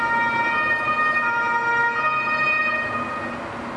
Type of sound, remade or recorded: recorded